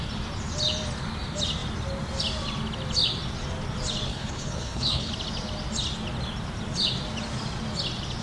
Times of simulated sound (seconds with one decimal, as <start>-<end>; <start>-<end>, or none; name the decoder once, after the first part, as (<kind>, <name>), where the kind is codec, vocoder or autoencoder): 4.1-5.1 (codec, HILCodec)